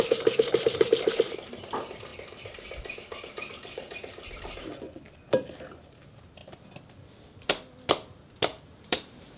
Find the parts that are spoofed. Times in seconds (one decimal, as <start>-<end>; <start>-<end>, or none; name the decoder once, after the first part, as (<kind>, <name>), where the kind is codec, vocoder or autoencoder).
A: 0.0-2.1 (vocoder, BigVGAN v2); 5.7-6.4; 8.6-9.4